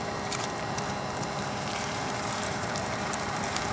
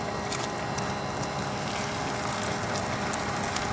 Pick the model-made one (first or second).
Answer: first